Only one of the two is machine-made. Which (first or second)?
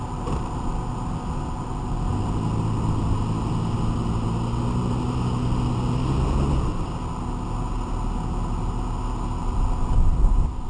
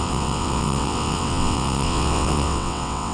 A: second